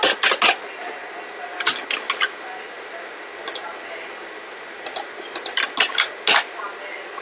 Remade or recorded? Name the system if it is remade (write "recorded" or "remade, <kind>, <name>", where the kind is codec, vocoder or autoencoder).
recorded